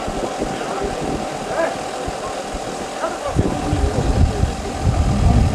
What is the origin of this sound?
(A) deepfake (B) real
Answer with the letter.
B